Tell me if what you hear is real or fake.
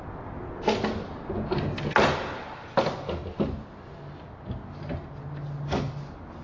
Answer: real